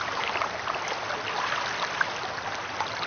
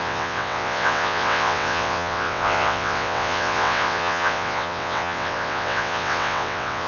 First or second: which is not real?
second